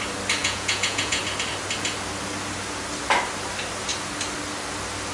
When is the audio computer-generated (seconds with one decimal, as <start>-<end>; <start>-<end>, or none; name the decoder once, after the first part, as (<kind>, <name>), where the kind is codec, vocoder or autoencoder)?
0.4-1.2 (vocoder, Vocos)